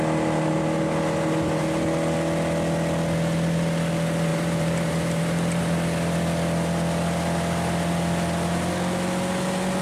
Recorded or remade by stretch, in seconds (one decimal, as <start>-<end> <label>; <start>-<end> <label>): 0.0-4.3 recorded; 4.3-5.6 remade; 5.6-9.8 recorded